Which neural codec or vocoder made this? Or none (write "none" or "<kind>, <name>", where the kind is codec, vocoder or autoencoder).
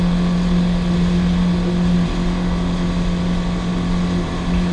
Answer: none